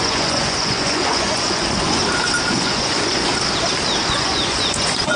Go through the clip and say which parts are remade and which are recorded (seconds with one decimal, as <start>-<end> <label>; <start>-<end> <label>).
0.0-2.0 remade; 2.0-2.5 recorded; 2.5-3.3 remade; 3.3-4.1 recorded; 4.1-5.2 remade